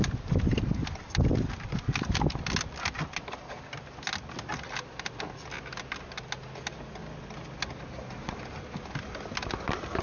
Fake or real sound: real